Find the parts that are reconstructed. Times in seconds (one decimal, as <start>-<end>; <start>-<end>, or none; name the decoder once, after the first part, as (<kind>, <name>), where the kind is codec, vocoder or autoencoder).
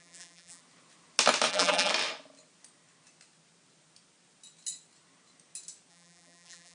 0.0-0.6 (vocoder, BigVGAN v2); 1.5-1.9; 5.9-6.7